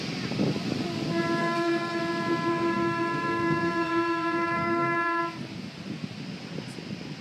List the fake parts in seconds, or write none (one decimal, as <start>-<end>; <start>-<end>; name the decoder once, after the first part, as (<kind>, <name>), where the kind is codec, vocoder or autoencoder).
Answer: 1.4-2.0 (codec, SNAC); 2.5-5.2